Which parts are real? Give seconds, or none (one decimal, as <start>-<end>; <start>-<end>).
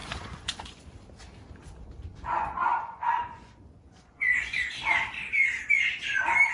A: 0.9-2.1; 4.8-6.5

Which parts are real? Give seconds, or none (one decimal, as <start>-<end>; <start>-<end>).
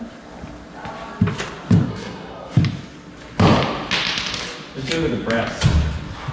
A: 0.0-1.9; 2.6-6.3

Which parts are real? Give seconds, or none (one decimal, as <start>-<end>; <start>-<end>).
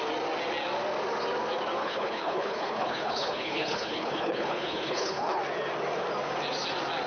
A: 0.0-1.8; 5.4-7.1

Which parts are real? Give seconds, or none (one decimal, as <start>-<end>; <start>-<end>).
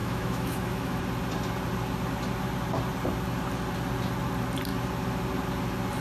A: 1.0-6.0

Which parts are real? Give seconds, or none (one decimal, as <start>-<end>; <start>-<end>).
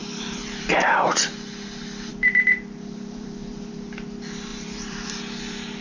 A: 0.7-2.1; 3.7-4.5; 5.2-5.8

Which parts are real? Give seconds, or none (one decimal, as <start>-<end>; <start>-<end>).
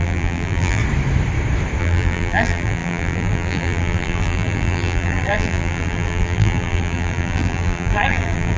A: 0.8-1.8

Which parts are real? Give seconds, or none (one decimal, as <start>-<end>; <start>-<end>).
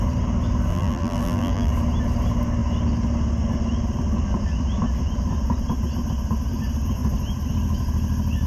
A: 0.0-0.7; 1.7-8.5